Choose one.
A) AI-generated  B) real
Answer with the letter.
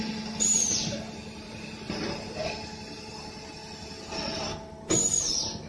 B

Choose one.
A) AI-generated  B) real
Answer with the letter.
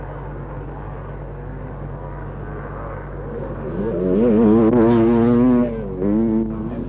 B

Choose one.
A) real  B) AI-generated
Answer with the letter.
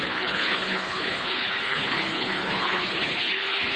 B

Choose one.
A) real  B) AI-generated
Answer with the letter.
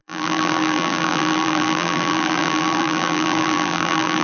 B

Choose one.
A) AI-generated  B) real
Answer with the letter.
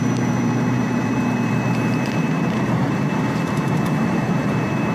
A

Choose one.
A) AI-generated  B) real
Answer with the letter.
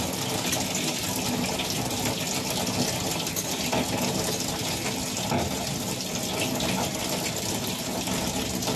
B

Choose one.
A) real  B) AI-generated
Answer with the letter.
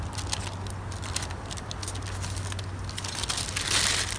A